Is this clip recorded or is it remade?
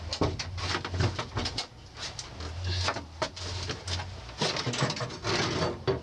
recorded